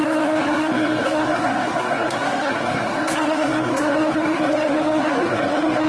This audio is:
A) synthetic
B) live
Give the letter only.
A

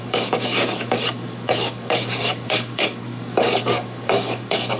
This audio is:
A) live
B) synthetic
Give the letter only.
B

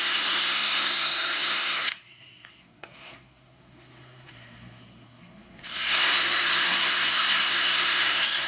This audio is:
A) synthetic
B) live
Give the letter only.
A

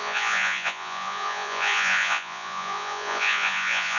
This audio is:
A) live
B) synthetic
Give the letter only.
B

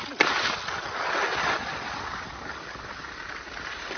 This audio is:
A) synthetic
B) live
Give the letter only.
B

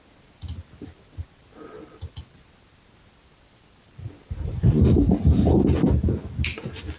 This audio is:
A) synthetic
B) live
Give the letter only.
B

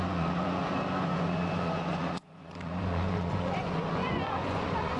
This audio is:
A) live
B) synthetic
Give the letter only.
B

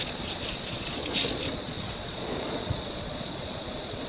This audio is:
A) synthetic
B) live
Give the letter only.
A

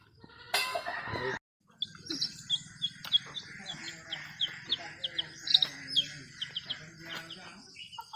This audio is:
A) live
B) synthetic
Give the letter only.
A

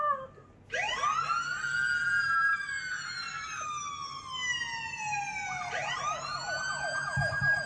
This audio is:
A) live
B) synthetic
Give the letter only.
A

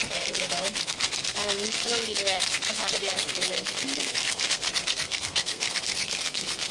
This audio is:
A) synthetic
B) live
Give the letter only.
A